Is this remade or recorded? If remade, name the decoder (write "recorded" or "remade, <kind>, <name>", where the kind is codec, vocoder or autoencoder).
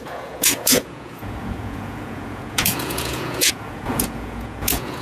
remade, vocoder, Vocos